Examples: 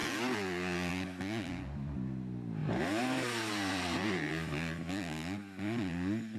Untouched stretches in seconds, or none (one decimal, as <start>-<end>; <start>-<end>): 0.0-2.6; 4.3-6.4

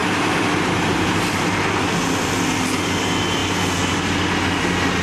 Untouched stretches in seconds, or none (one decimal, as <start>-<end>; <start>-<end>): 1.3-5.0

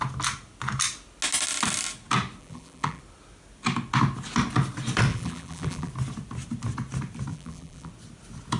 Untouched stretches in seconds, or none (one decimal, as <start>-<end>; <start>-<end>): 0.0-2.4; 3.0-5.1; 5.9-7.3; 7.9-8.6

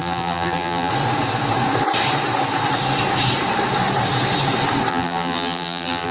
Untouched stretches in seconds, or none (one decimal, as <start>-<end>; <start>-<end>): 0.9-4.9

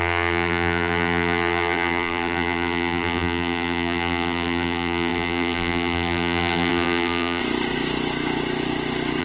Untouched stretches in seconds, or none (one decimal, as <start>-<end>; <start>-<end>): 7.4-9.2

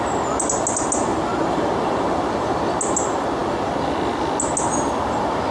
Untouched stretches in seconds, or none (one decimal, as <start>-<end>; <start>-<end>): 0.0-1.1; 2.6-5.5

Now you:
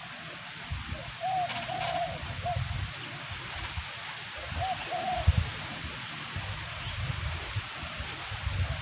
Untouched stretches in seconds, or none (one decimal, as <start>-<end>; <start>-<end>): 0.0-1.0; 3.0-5.7; 7.9-8.8